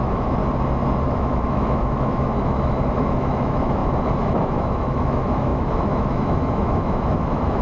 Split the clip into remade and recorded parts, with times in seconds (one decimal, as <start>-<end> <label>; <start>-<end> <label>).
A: 0.0-0.4 remade; 0.4-1.1 recorded; 1.1-7.6 remade